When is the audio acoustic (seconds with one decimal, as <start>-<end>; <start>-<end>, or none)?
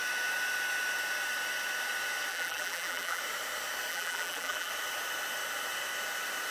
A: 0.0-2.3; 3.2-3.9; 4.7-6.5